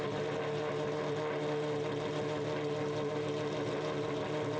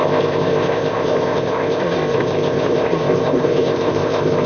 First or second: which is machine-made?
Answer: second